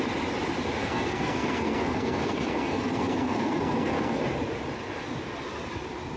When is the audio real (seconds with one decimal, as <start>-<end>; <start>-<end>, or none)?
0.0-0.8; 4.2-6.2